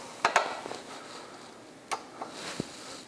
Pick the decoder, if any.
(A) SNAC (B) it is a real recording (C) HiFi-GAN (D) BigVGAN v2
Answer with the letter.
B